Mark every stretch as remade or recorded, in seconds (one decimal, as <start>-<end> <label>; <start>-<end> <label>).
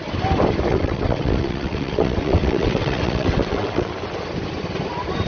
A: 0.0-0.7 recorded; 0.7-3.9 remade; 3.9-5.3 recorded